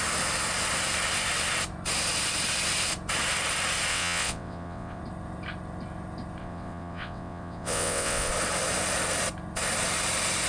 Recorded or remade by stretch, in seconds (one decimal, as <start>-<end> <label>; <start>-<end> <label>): 0.0-3.9 recorded; 3.9-5.0 remade; 5.0-6.4 recorded; 6.4-8.3 remade; 8.3-10.5 recorded